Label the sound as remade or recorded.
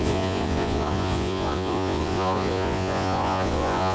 remade